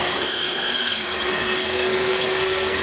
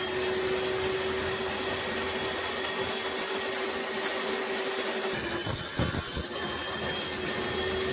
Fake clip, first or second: first